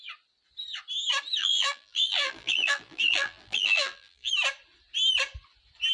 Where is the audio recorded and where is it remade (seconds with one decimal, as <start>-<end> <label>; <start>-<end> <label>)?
0.0-1.4 recorded; 1.4-4.3 remade; 4.3-5.9 recorded